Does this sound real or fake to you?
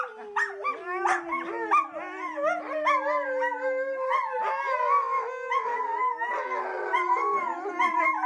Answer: real